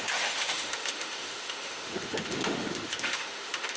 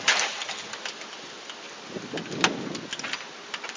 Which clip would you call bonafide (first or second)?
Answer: second